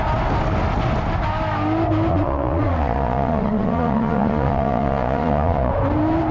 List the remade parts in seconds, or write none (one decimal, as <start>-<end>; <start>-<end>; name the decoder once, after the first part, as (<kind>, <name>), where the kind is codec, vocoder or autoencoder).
2.1-5.7 (vocoder, Vocos)